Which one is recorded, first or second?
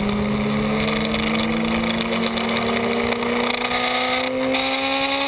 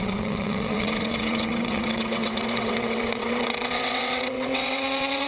first